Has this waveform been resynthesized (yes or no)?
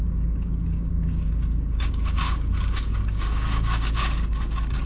yes